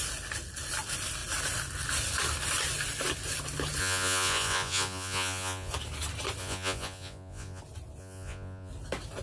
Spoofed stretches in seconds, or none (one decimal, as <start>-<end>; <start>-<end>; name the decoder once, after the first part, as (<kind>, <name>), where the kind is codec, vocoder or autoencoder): 3.8-5.7 (vocoder, Vocos); 6.4-7.6; 8.0-8.7